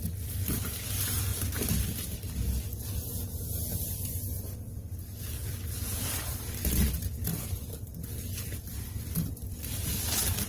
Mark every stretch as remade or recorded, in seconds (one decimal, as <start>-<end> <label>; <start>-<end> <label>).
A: 0.0-3.8 recorded; 3.8-6.4 remade; 6.4-7.3 recorded; 7.3-7.9 remade; 7.9-10.5 recorded